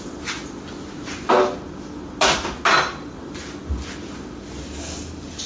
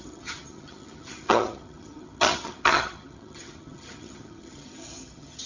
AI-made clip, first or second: second